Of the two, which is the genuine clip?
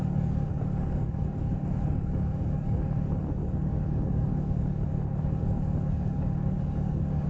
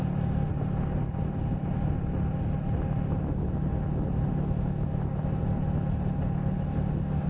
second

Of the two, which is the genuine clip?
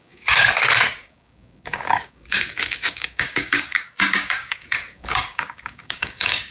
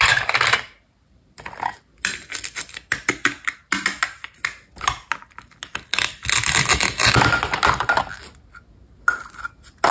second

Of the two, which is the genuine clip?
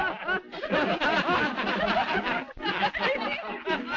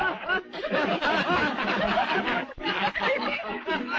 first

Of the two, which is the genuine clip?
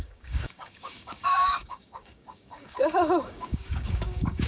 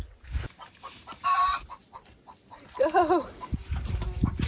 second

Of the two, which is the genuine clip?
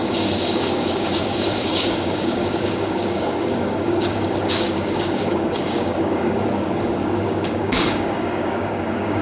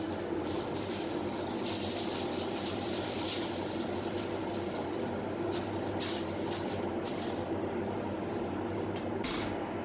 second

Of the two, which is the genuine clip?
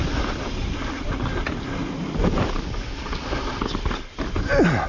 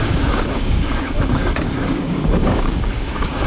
first